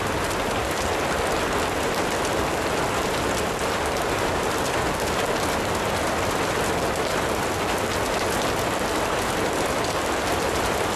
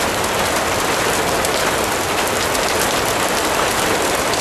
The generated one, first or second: second